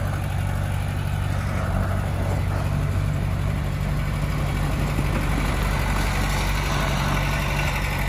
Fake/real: real